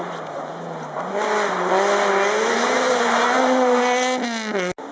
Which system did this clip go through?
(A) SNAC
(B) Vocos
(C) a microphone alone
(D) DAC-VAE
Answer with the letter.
C